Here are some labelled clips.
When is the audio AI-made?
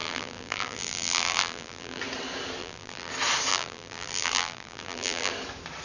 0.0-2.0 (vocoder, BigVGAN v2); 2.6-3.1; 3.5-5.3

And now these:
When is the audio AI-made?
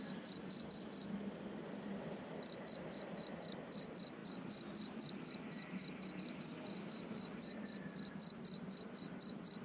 0.0-9.6 (vocoder, BigVGAN v2)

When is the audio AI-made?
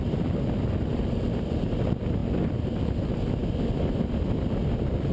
0.0-3.4 (vocoder, BigVGAN v2); 4.0-5.1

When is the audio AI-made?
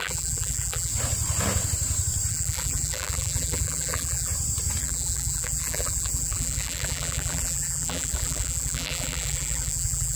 0.0-0.9 (vocoder, BigVGAN v2); 2.3-4.3; 4.8-10.2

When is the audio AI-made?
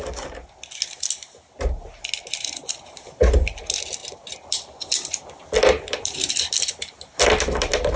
4.0-8.0 (vocoder, BigVGAN v2)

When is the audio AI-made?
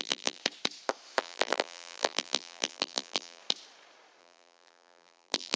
0.0-0.4 (vocoder, BigVGAN v2); 1.2-3.4; 4.2-5.6